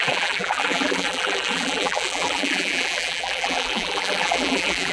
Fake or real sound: fake